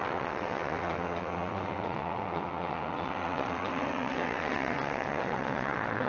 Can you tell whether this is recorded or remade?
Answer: remade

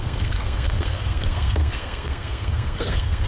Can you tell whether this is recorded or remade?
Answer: remade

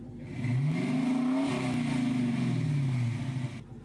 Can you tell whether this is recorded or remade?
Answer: recorded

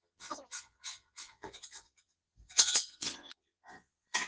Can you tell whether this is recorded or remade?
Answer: remade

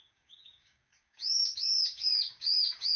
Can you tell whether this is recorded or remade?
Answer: remade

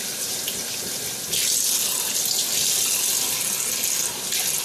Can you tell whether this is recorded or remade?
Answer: recorded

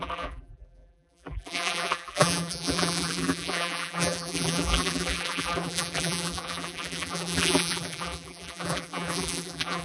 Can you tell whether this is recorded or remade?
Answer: remade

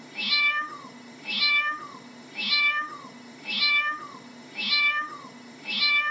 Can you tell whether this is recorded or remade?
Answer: remade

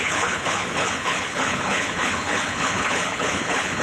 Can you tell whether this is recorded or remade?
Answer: remade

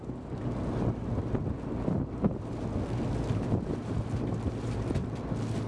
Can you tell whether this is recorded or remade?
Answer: recorded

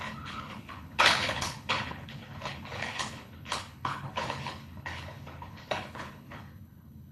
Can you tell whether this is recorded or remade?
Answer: remade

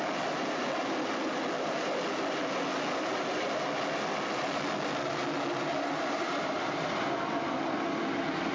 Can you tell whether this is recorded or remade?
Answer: recorded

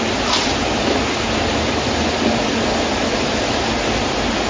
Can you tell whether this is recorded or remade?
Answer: recorded